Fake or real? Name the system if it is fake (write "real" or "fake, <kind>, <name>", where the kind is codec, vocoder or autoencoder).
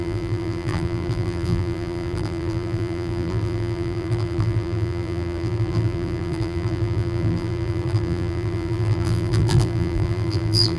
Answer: fake, vocoder, BigVGAN v2